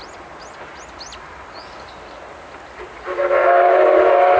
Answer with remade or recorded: recorded